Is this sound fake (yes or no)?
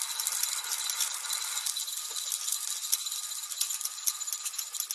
no